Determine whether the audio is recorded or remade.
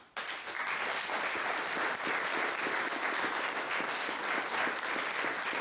recorded